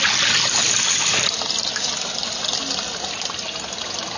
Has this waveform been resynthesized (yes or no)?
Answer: no